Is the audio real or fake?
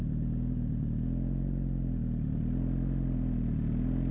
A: real